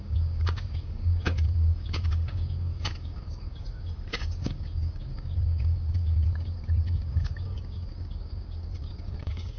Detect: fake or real fake